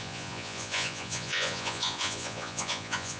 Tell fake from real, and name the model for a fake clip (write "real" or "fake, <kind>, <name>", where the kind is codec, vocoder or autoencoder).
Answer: fake, vocoder, Vocos